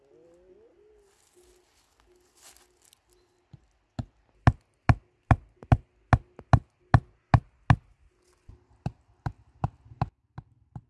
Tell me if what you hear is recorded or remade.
recorded